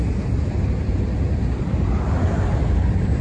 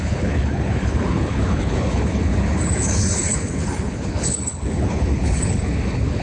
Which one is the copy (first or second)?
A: second